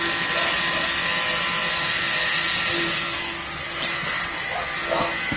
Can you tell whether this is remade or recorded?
recorded